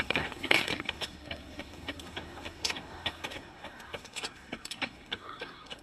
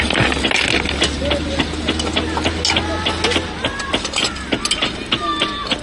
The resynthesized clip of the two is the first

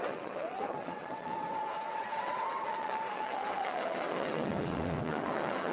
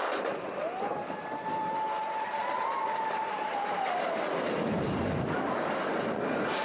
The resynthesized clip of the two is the first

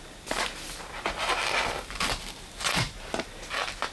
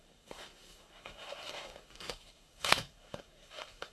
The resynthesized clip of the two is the second